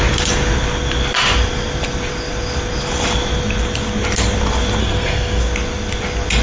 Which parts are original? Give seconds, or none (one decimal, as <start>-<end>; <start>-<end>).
0.0-4.8; 5.4-6.4